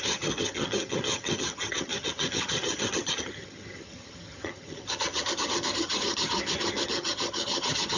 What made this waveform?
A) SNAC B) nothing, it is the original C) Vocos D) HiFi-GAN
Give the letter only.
D